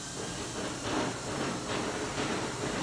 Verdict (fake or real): real